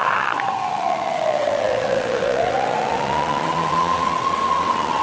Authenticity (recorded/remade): remade